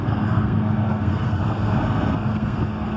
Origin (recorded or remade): remade